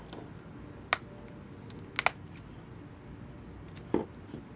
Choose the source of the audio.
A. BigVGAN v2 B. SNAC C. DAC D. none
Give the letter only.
D